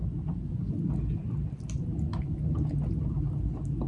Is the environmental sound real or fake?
real